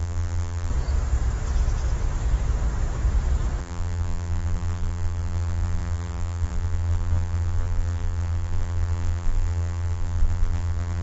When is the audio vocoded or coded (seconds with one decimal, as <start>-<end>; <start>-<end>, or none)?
0.0-0.7; 3.6-11.0